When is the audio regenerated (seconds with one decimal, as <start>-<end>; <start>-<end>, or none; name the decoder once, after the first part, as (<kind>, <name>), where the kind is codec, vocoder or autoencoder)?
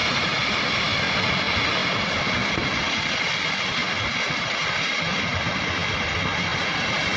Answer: none